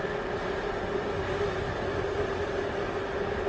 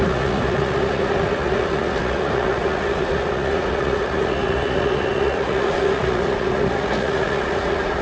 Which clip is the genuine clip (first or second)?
first